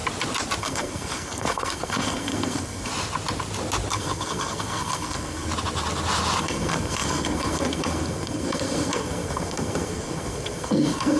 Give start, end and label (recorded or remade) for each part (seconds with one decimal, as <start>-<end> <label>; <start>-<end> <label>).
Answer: 0.0-0.6 recorded; 0.6-2.9 remade; 2.9-3.9 recorded; 3.9-5.5 remade; 5.5-6.4 recorded; 6.4-11.2 remade